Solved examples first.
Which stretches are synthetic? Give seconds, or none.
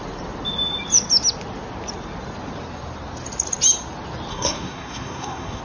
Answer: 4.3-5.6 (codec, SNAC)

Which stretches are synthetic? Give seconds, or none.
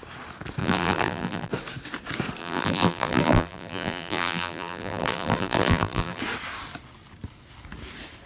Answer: 0.6-1.5 (vocoder, BigVGAN v2); 2.4-6.2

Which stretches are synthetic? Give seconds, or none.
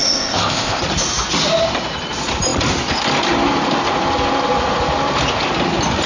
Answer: 0.0-0.8 (codec, ZipCodec)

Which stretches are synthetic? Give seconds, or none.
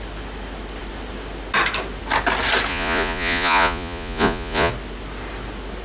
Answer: 2.7-4.7 (vocoder, Vocos)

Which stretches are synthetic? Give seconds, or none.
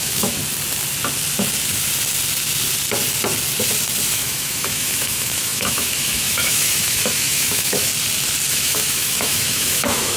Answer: 0.0-0.4 (autoencoder, DAC-VAE); 4.1-7.9; 8.5-10.2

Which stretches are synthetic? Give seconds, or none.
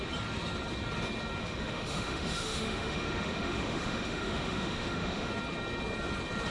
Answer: 1.4-5.3 (autoencoder, DAC-VAE)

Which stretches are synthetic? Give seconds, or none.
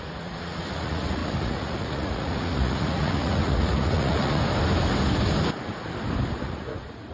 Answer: 0.0-4.4 (vocoder, Vocos); 6.3-7.1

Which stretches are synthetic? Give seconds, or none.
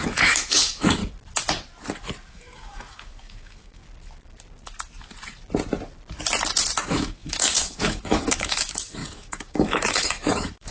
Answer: 0.0-1.0 (autoencoder, DAC-VAE); 2.3-3.8; 6.8-10.7